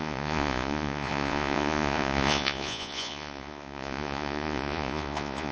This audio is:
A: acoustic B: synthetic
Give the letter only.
B